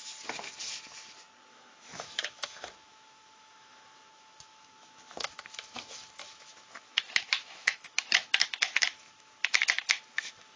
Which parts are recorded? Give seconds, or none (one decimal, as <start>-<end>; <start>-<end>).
0.0-1.5